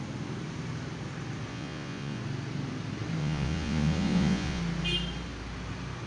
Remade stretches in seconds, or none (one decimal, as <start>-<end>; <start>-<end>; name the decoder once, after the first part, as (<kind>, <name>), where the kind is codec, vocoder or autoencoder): 1.5-2.2 (vocoder, Vocos); 3.2-4.6